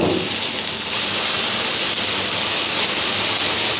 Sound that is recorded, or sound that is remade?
recorded